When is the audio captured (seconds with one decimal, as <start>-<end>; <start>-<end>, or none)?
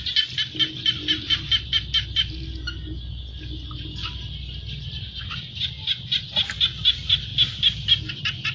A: 0.0-8.5